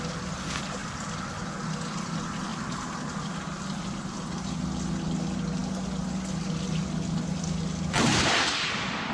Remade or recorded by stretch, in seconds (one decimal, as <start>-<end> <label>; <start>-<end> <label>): 0.0-9.1 recorded